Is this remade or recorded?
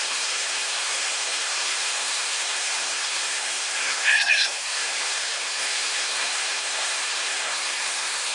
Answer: remade